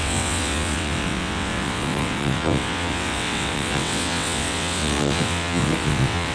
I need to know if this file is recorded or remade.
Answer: remade